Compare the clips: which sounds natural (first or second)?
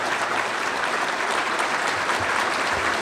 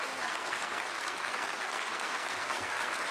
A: first